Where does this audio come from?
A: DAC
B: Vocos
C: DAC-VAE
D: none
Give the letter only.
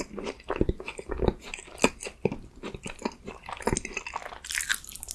D